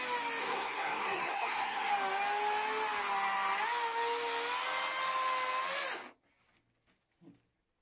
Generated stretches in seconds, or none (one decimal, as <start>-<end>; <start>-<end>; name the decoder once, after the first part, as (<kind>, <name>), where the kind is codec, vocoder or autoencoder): 0.4-1.9 (codec, SNAC)